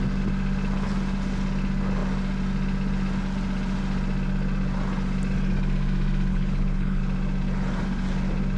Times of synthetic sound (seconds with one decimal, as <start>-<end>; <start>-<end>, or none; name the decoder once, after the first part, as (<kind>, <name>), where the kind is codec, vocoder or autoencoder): 6.3-7.0 (codec, HILCodec)